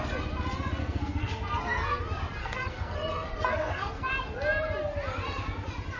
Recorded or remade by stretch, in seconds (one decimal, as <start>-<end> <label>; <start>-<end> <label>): 0.0-0.8 recorded; 0.8-2.0 remade; 2.0-2.4 recorded; 2.4-4.1 remade; 4.1-6.0 recorded